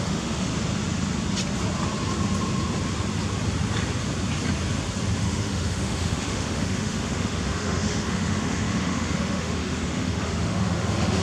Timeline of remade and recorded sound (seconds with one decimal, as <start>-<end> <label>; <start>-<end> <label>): 0.0-0.5 remade; 0.5-5.2 recorded; 5.2-11.2 remade